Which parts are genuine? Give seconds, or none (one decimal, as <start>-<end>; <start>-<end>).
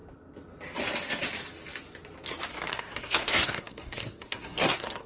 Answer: 0.0-2.5